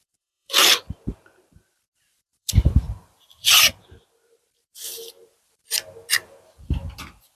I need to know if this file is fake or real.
fake